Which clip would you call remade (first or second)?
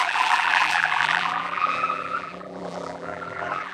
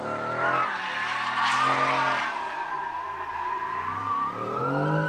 first